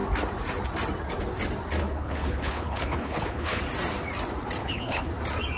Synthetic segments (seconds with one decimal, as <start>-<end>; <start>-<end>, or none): 1.8-3.6; 4.6-5.1